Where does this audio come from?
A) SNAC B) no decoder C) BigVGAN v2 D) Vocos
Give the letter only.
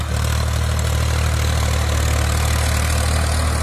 B